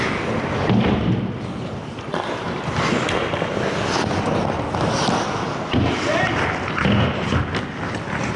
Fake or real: real